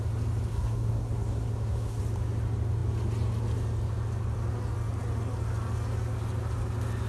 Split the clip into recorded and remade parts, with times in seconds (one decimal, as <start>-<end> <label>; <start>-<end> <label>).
0.0-0.5 recorded; 0.5-2.0 remade; 2.0-7.1 recorded